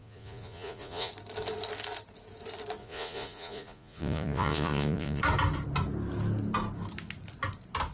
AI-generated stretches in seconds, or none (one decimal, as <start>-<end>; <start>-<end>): 0.0-1.1; 2.8-5.2